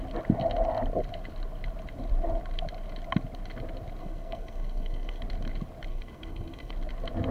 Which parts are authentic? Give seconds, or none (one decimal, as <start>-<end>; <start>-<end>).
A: 0.0-4.0; 5.2-5.9; 6.7-7.3

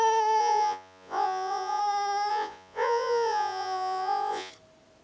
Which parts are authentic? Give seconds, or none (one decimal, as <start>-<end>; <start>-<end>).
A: 0.0-0.4; 1.8-2.3; 4.5-5.0

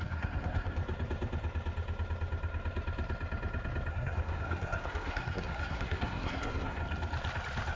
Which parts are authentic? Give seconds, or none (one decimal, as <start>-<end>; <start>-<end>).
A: 0.8-3.9; 6.8-7.8

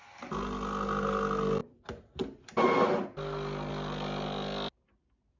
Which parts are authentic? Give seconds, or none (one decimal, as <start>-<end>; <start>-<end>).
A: 0.0-5.4

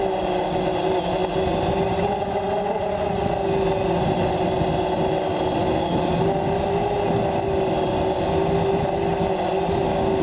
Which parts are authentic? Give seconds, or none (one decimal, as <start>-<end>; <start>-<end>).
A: 0.0-10.2